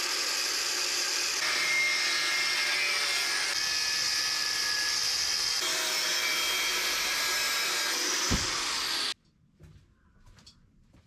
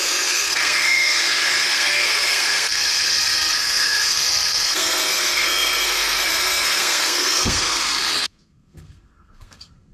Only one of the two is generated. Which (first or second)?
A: second